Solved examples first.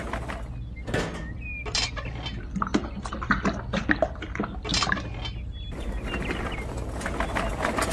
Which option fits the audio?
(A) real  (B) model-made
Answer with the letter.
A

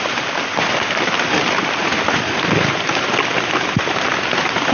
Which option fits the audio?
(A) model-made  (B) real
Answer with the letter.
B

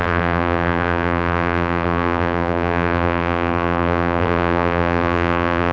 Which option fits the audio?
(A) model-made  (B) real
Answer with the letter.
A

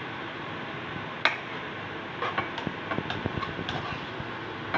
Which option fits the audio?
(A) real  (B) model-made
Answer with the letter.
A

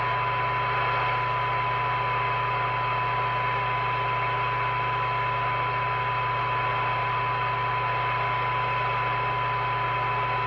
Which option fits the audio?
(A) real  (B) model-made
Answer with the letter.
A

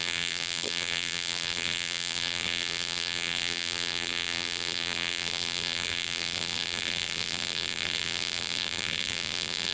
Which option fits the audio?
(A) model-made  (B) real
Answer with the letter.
A